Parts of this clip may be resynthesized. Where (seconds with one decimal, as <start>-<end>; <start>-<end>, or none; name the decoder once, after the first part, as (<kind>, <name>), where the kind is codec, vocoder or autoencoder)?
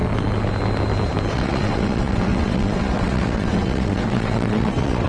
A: 1.3-5.1 (vocoder, WaveNeXt)